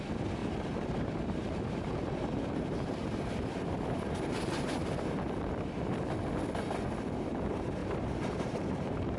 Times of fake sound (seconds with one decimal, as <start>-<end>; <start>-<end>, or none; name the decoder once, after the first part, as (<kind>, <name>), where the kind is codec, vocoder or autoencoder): 0.4-5.1 (vocoder, BigVGAN v2); 7.8-9.2